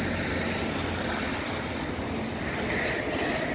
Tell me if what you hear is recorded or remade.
recorded